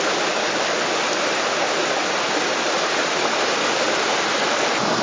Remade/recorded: recorded